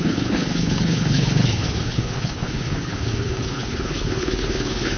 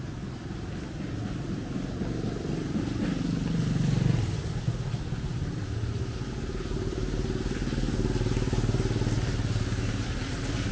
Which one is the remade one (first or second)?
first